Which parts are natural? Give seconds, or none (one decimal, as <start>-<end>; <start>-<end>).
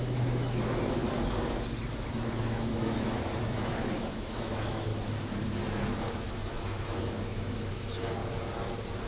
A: 1.0-2.4; 4.9-6.0; 8.2-9.1